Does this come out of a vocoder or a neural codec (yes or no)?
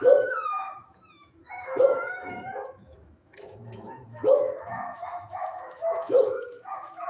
yes